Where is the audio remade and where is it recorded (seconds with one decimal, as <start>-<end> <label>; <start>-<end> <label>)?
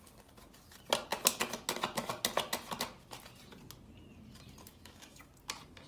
0.0-4.7 recorded; 4.7-5.3 remade; 5.3-5.9 recorded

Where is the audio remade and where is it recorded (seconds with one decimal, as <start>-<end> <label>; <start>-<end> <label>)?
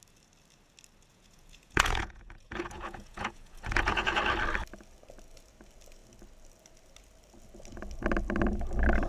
0.0-1.1 recorded; 1.1-4.2 remade; 4.2-9.1 recorded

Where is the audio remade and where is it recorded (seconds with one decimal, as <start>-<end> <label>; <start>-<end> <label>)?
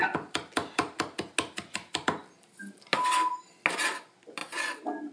0.0-5.1 recorded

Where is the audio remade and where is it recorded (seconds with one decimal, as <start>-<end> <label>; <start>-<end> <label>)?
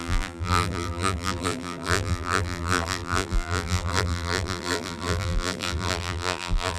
0.0-6.8 remade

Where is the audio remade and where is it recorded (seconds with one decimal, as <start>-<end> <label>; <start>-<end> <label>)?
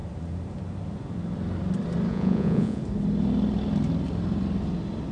0.0-2.1 recorded; 2.1-2.8 remade; 2.8-5.1 recorded